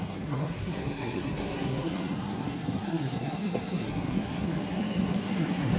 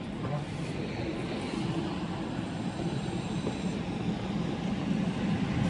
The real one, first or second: second